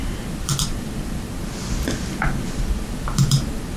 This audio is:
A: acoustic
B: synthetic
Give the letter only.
B